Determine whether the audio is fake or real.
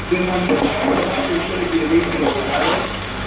fake